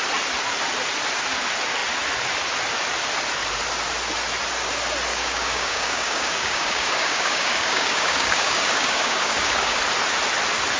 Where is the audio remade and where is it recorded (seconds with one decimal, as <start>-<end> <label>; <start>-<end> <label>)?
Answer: 0.0-5.1 recorded; 5.1-9.8 remade; 9.8-10.8 recorded